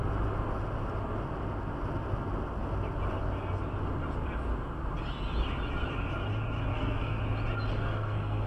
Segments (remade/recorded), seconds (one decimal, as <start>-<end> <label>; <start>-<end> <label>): 0.0-6.7 recorded; 6.7-7.2 remade; 7.2-7.7 recorded; 7.7-8.5 remade